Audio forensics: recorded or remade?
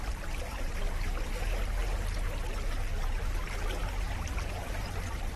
recorded